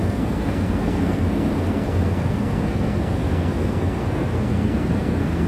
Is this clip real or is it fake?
fake